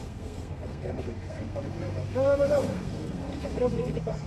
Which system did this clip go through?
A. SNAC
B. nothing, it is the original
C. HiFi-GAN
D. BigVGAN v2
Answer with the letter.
A